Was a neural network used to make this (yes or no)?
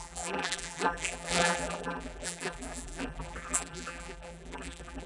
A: yes